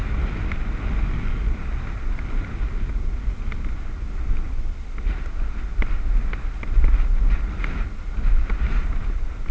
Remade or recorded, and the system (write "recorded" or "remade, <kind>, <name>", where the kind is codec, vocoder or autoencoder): recorded